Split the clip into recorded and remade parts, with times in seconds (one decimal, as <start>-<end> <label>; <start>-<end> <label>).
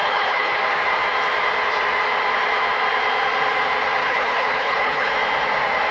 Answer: 0.0-0.6 remade; 0.6-4.0 recorded; 4.0-5.1 remade; 5.1-5.9 recorded